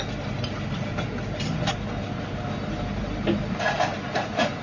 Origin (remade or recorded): recorded